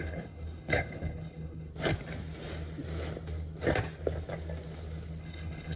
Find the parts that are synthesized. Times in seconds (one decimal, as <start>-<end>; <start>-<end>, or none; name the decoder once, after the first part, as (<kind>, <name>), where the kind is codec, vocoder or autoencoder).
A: 0.0-1.7 (codec, HILCodec); 5.2-5.8